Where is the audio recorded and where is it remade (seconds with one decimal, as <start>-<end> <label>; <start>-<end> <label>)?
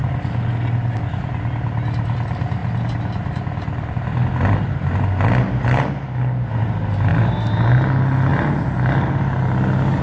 0.0-10.0 recorded